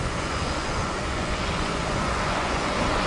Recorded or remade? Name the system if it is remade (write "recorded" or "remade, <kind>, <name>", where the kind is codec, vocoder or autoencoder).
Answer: remade, vocoder, Vocos